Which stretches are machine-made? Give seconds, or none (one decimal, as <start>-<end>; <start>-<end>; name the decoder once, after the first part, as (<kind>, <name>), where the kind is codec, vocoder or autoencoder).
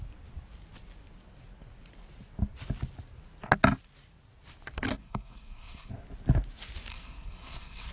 5.0-5.9 (codec, SNAC); 6.9-7.9